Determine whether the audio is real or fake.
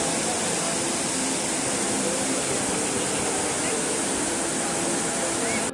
real